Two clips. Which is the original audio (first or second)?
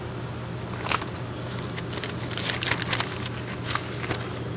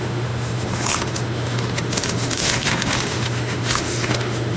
first